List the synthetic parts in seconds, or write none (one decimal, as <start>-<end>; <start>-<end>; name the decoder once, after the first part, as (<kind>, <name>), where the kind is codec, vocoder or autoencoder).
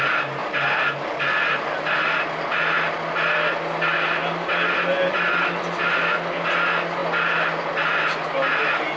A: none